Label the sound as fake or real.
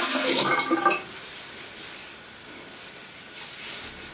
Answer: real